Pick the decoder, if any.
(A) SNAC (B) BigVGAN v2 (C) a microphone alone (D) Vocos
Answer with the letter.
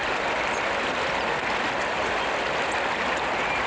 C